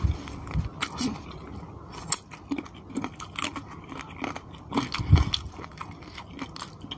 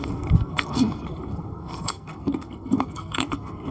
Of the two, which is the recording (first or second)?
first